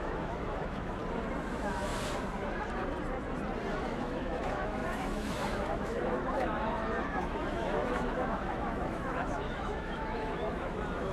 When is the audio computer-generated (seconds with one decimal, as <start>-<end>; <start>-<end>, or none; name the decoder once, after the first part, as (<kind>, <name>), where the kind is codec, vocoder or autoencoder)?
0.0-1.0 (autoencoder, DAC-VAE); 1.5-1.9; 3.8-11.1